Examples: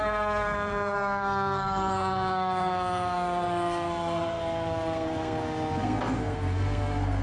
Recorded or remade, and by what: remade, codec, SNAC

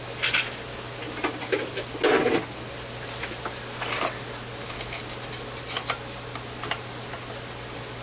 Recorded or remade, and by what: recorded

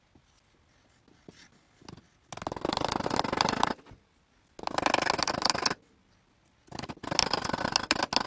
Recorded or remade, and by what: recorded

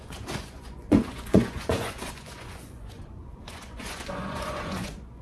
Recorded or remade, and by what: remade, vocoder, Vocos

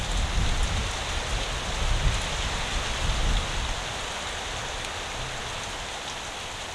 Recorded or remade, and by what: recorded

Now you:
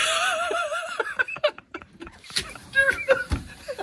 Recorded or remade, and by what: remade, vocoder, BigVGAN v2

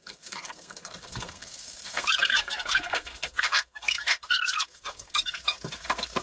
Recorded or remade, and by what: remade, codec, SNAC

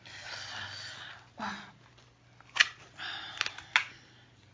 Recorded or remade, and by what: recorded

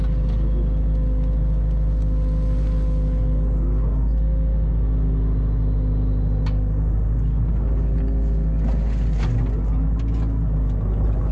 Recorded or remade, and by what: recorded